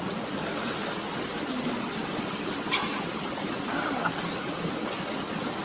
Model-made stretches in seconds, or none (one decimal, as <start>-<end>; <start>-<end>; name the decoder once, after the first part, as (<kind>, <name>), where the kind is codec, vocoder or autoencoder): none